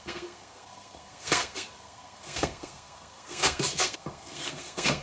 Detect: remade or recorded remade